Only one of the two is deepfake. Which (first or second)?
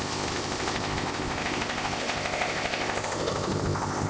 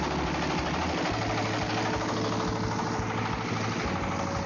first